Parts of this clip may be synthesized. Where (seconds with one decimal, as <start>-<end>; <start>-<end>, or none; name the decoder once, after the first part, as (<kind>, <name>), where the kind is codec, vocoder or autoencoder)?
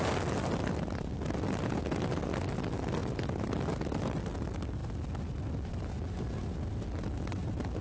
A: none